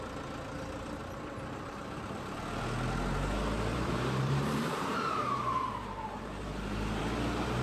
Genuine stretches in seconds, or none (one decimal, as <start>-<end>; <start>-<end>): 0.0-1.0; 2.2-3.7; 7.0-7.6